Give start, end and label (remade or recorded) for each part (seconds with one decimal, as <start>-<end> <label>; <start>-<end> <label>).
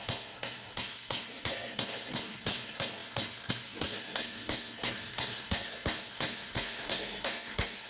0.0-7.9 remade